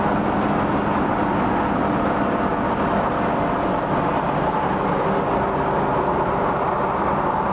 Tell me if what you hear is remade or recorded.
recorded